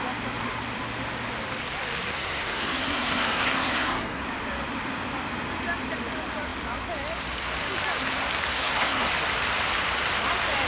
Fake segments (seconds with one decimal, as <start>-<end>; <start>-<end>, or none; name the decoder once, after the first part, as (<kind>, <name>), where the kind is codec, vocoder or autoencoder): 2.1-4.2 (codec, SNAC); 8.5-9.1